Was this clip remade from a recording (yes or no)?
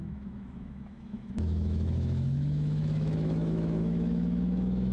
yes